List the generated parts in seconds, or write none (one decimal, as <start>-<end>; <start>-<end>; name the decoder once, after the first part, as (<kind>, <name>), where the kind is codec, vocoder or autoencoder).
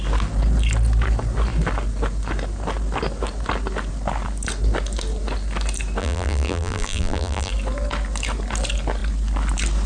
6.0-7.5 (vocoder, BigVGAN v2)